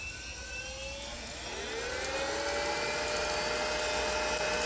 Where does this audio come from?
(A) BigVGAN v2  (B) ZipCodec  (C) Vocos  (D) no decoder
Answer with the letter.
D